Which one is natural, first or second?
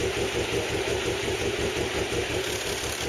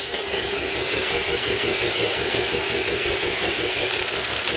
first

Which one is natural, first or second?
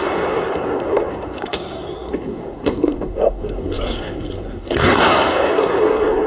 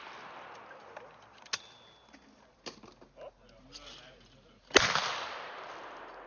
second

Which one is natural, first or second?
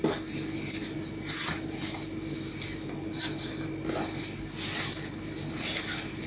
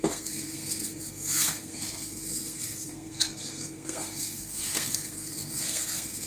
first